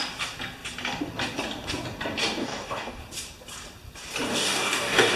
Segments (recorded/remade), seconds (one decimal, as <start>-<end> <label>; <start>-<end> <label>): 0.0-2.4 recorded; 2.4-3.0 remade; 3.0-4.3 recorded; 4.3-5.2 remade